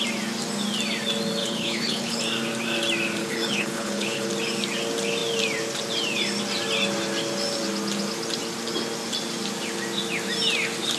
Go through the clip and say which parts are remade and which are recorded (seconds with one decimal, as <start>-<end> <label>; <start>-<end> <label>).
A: 0.0-1.4 recorded; 1.4-2.2 remade; 2.2-3.2 recorded; 3.2-4.3 remade; 4.3-11.0 recorded

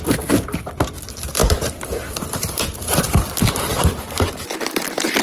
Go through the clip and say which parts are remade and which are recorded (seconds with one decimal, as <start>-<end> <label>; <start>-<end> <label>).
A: 0.0-5.2 recorded

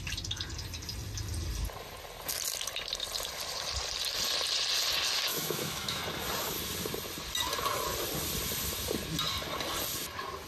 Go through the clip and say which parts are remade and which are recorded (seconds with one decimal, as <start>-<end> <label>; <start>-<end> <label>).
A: 0.0-5.3 recorded; 5.3-6.0 remade; 6.0-10.5 recorded

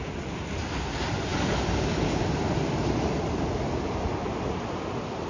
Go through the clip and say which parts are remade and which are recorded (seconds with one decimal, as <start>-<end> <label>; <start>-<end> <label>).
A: 0.0-5.3 recorded